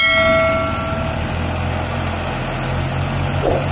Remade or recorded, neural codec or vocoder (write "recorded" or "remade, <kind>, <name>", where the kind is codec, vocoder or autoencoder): recorded